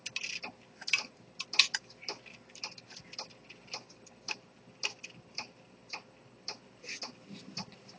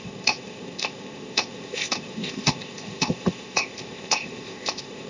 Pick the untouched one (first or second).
first